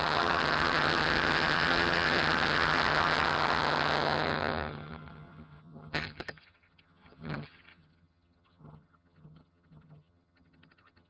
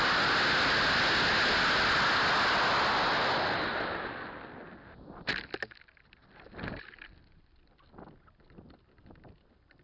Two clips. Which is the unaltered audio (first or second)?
second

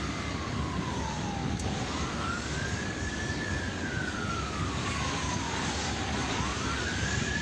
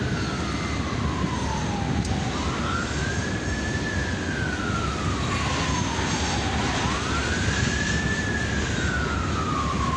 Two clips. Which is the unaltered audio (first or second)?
second